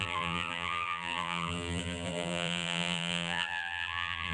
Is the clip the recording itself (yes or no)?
no